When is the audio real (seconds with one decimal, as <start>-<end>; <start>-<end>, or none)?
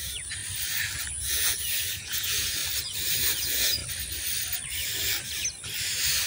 0.4-1.1; 2.6-3.4; 3.8-6.3